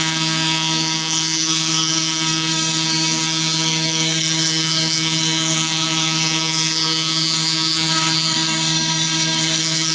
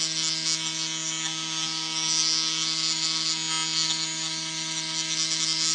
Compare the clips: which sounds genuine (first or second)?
second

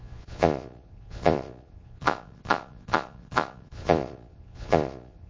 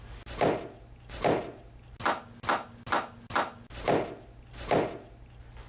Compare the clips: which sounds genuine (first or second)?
second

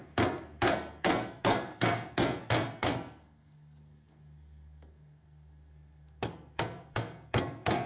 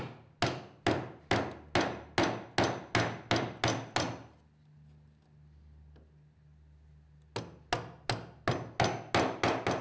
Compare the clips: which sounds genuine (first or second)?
second